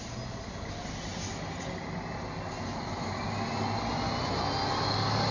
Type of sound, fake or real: real